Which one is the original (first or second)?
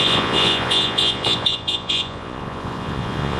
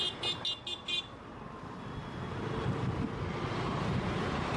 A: second